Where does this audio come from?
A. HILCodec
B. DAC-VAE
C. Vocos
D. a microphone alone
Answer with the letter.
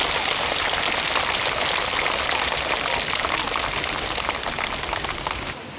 D